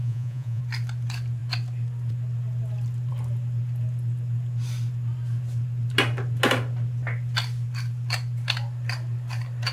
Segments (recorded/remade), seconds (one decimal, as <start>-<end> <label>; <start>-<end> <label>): 0.0-0.6 remade; 0.6-9.7 recorded